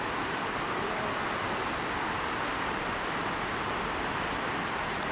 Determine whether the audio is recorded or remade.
recorded